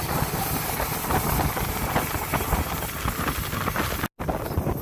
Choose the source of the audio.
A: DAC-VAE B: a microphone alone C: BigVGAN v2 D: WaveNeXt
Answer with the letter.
B